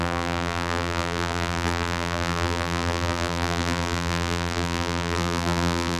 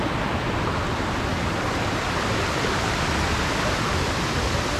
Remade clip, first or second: first